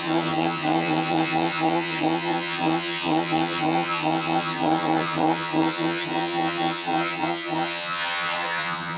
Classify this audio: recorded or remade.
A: remade